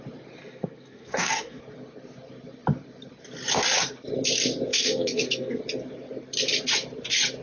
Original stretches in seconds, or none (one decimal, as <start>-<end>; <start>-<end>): 0.0-0.4; 1.6-4.7; 5.6-7.4